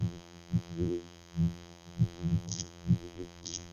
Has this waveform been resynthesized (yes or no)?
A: yes